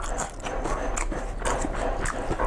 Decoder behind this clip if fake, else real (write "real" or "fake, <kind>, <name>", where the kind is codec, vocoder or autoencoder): real